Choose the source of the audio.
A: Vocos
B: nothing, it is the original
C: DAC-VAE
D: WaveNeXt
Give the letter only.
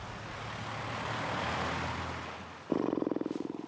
B